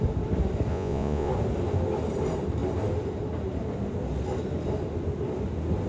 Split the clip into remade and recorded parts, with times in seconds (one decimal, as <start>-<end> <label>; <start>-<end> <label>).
0.0-0.7 recorded; 0.7-1.3 remade; 1.3-5.9 recorded